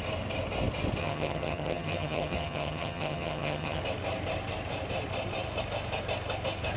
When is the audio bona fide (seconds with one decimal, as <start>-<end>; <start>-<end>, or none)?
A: 0.0-1.0; 3.8-6.8

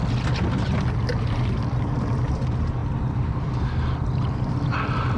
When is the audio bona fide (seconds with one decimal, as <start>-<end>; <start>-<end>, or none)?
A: 0.0-5.2